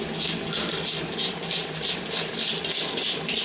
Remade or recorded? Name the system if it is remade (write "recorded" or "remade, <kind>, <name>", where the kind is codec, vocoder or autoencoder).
recorded